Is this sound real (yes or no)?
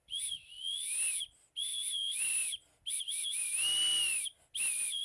yes